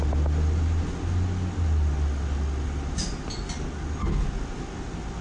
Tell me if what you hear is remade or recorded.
recorded